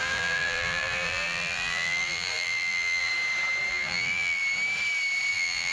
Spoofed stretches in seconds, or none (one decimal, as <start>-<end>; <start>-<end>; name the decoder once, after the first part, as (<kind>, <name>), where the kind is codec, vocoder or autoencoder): 0.0-3.1 (vocoder, BigVGAN v2); 3.7-4.4; 5.3-5.7